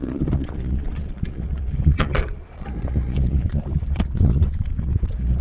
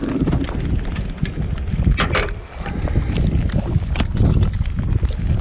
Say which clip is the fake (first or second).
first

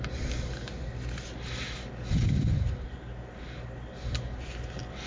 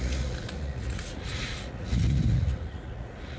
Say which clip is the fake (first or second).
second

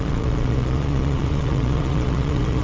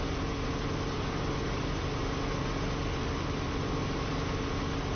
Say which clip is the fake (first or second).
first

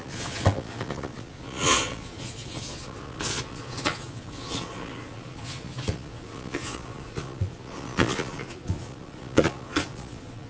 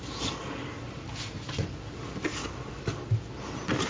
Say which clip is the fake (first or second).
first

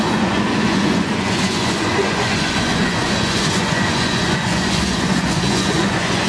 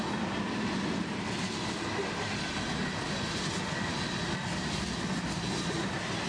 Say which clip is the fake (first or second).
first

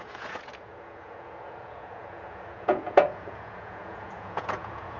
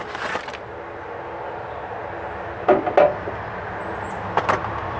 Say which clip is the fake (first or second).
first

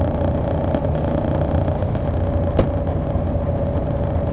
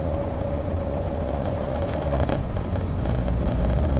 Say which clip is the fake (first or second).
second